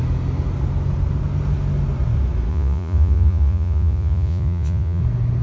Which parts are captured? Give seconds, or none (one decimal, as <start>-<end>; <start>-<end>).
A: 0.0-2.5; 5.0-5.4